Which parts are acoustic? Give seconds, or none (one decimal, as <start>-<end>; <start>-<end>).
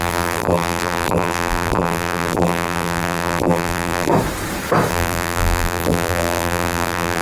4.1-4.9